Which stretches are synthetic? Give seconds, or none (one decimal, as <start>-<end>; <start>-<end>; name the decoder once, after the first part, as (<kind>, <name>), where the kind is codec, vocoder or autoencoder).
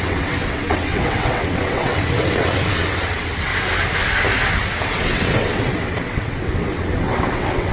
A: 0.0-3.5 (vocoder, WaveNeXt); 5.0-7.7